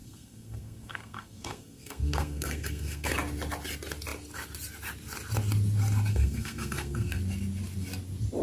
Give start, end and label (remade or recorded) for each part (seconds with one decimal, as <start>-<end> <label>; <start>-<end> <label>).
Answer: 0.0-3.1 remade; 3.1-6.1 recorded; 6.1-7.2 remade; 7.2-8.4 recorded